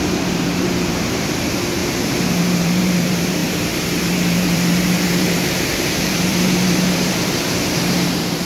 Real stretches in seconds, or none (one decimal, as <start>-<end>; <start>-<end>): 1.8-2.4